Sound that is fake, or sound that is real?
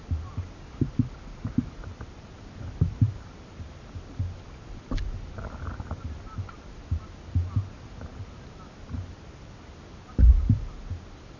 real